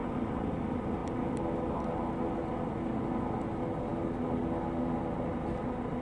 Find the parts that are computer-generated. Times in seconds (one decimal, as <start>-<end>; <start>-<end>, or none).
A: none